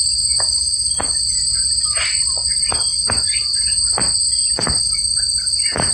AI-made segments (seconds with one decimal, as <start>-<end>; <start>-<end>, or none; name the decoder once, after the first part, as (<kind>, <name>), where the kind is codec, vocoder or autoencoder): none